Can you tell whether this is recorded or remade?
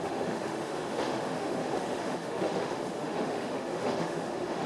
remade